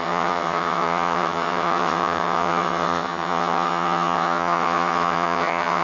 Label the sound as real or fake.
fake